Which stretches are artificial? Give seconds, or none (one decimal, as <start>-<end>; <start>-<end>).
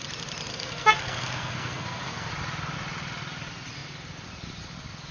0.5-2.3